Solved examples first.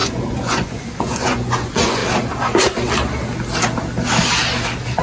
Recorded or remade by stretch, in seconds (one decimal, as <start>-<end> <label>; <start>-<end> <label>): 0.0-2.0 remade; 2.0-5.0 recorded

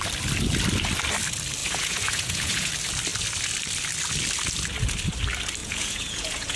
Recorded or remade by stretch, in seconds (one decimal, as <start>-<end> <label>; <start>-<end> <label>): 0.0-1.6 recorded; 1.6-2.7 remade; 2.7-5.6 recorded; 5.6-6.6 remade

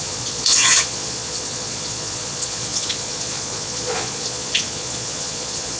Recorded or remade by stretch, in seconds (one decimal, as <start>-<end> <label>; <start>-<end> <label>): 0.0-5.8 remade